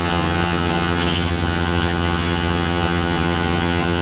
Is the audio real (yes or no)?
no